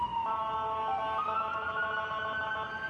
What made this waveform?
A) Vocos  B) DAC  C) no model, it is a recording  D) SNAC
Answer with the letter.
C